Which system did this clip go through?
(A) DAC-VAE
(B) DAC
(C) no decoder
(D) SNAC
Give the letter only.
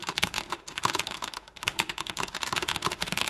A